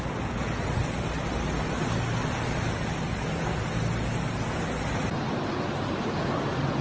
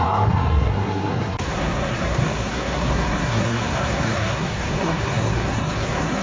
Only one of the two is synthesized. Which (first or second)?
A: second